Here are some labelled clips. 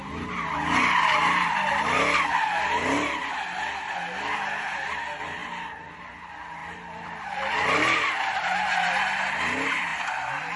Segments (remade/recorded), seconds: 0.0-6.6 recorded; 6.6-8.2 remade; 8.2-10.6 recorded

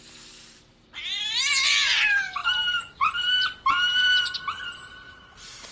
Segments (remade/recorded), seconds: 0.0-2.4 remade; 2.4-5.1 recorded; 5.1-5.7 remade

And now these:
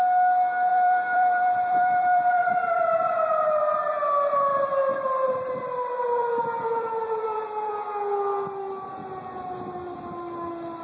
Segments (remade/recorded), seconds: 0.0-0.7 recorded; 0.7-3.6 remade; 3.6-4.5 recorded; 4.5-7.7 remade; 7.7-10.8 recorded

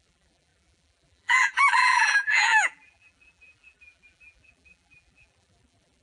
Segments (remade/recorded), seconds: 0.0-6.0 remade

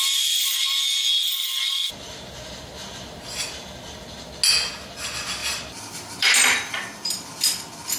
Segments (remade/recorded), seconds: 0.0-5.4 recorded; 5.4-7.6 remade; 7.6-8.0 recorded

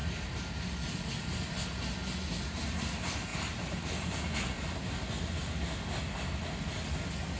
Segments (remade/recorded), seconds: 0.0-3.3 recorded; 3.3-4.2 remade; 4.2-7.4 recorded